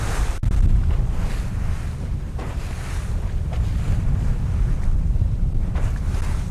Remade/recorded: recorded